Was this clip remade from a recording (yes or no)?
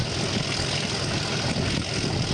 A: no